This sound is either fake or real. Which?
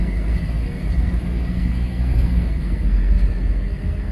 fake